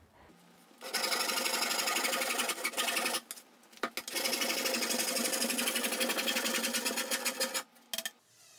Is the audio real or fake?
real